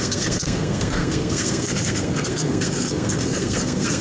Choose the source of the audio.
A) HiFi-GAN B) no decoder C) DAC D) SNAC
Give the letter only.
D